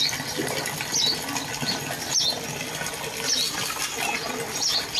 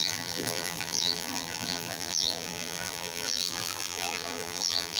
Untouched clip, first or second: first